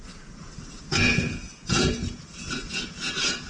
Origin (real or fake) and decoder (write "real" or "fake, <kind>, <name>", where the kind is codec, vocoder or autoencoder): fake, vocoder, Vocos